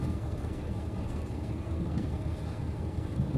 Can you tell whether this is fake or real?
fake